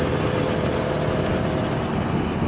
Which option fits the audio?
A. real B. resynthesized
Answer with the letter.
A